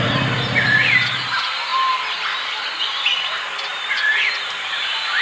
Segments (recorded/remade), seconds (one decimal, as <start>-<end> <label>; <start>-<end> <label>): 0.0-3.7 recorded; 3.7-5.2 remade